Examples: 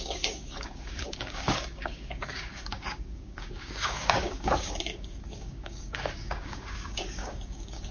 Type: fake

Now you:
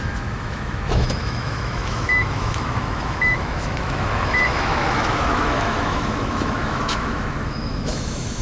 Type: fake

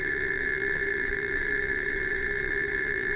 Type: fake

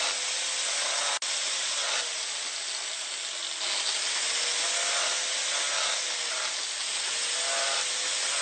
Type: real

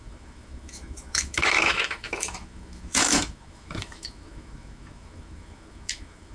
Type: fake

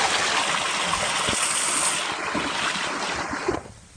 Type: real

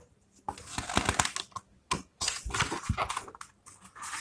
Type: real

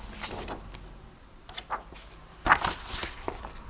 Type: real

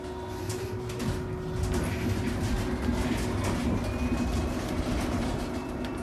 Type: real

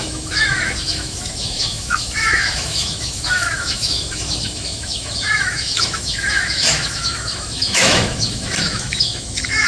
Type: fake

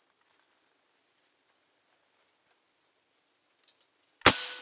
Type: real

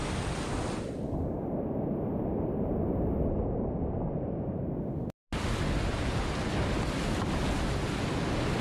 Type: real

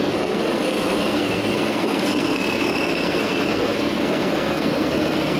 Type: fake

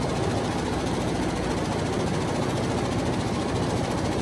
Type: real